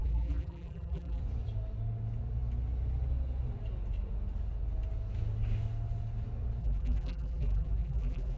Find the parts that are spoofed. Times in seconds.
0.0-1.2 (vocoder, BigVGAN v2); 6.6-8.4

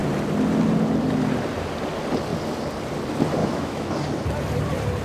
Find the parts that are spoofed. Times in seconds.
3.4-3.9 (autoencoder, DAC-VAE)

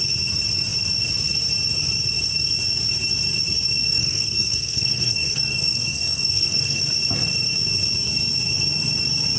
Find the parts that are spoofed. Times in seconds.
3.8-6.8 (codec, SNAC)

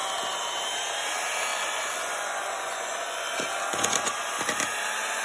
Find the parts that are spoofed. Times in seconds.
1.5-4.3 (vocoder, Vocos)

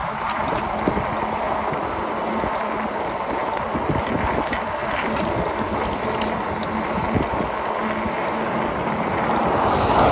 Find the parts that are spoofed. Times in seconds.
none

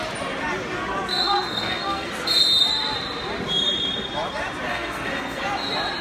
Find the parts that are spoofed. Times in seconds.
1.1-2.1 (codec, SNAC); 4.7-5.4